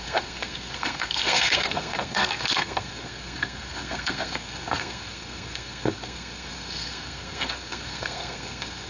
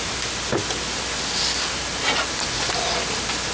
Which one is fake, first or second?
first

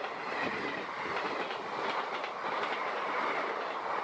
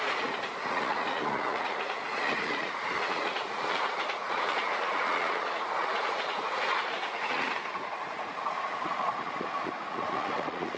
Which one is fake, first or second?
second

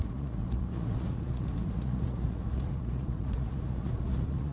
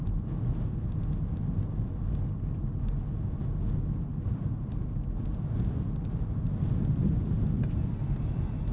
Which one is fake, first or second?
first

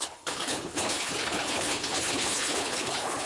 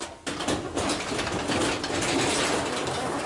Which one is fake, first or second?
first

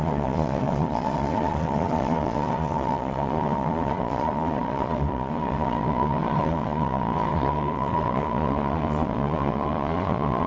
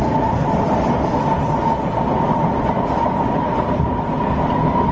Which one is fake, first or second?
first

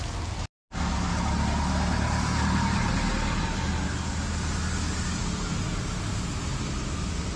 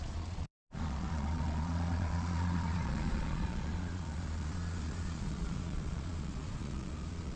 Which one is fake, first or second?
second